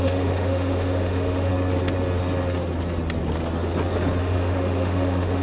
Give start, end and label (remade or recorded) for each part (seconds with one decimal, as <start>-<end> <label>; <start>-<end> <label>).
0.0-1.5 remade; 1.5-4.2 recorded; 4.2-5.4 remade

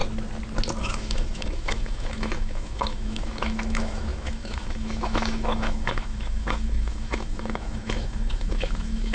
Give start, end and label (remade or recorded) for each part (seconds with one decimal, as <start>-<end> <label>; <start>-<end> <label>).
0.0-0.8 recorded; 0.8-9.1 remade